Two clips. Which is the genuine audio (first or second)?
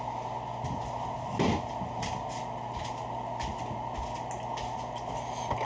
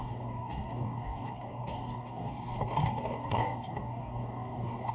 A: first